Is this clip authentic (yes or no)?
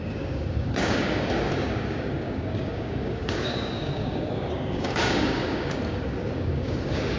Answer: no